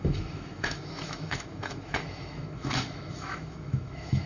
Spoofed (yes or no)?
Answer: yes